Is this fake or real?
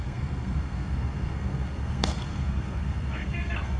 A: fake